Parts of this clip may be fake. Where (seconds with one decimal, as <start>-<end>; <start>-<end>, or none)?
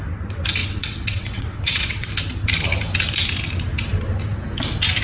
0.6-2.1